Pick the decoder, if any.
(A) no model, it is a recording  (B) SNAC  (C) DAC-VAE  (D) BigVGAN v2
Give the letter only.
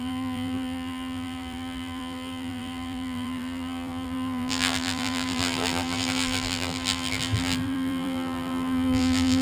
D